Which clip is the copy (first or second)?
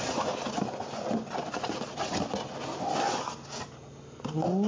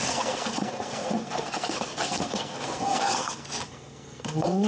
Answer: second